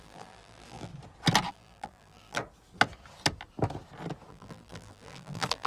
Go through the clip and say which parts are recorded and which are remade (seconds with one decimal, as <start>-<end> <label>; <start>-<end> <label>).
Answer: 0.0-0.9 remade; 0.9-1.5 recorded; 1.5-2.4 remade; 2.4-4.3 recorded; 4.3-5.7 remade

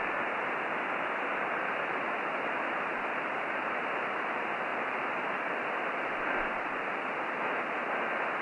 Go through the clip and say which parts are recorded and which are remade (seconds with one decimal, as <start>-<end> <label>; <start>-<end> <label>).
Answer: 0.0-4.7 recorded; 4.7-6.9 remade; 6.9-8.4 recorded

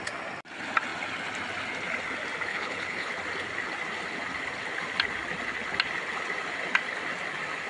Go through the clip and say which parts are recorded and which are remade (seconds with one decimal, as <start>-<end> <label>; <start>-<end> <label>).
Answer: 0.0-2.5 recorded; 2.5-3.1 remade; 3.1-7.7 recorded

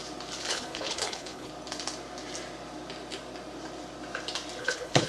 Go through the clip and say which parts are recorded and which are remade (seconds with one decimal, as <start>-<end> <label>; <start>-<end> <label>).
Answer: 0.0-0.5 recorded; 0.5-1.5 remade; 1.5-4.6 recorded; 4.6-5.1 remade

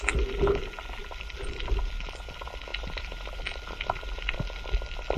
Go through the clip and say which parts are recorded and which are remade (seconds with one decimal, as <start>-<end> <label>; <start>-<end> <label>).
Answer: 0.0-2.7 recorded; 2.7-3.4 remade; 3.4-5.2 recorded

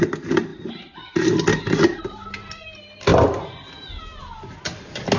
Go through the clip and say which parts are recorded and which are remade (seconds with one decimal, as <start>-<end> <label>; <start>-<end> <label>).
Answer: 0.0-0.5 recorded; 0.5-2.0 remade; 2.0-5.2 recorded